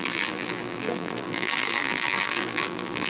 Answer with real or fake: fake